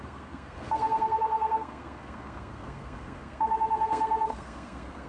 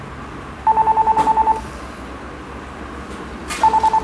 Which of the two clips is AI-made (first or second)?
first